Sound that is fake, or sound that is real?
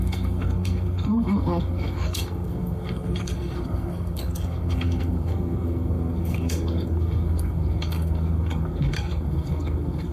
fake